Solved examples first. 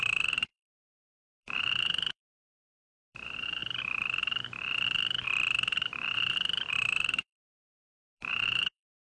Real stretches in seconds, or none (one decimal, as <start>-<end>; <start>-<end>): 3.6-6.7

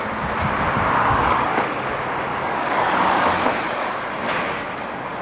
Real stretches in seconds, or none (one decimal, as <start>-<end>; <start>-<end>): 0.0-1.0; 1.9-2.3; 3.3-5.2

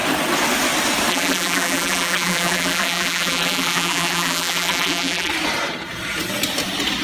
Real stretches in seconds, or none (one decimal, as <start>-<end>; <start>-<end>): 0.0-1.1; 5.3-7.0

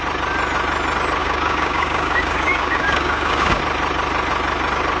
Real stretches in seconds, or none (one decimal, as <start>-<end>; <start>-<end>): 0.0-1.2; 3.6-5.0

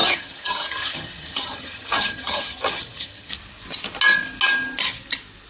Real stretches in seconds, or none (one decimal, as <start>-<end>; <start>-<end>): 3.3-5.5